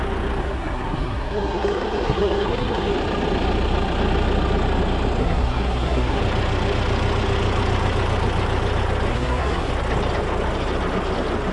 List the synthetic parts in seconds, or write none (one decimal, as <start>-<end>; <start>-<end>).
0.4-2.9; 5.2-6.2; 9.1-9.7